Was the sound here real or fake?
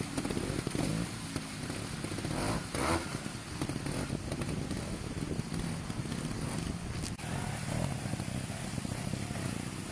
real